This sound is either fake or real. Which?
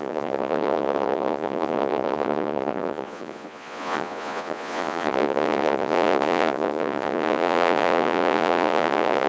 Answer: fake